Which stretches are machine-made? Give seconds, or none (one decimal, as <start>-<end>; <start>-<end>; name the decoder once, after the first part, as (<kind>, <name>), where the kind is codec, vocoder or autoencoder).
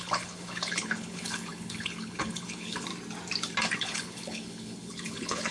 0.0-2.9 (codec, HILCodec); 3.8-5.5